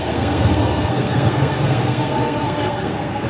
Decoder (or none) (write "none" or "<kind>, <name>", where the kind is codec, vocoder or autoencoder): codec, SNAC